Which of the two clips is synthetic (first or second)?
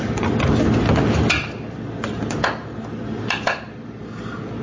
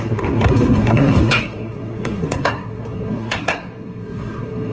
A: second